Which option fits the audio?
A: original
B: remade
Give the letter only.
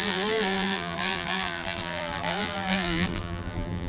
B